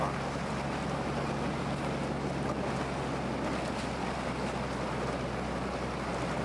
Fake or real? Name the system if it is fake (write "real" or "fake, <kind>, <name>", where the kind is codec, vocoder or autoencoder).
real